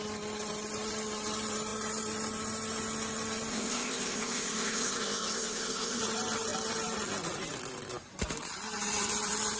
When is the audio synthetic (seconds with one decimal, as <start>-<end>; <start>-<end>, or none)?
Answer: 3.5-6.0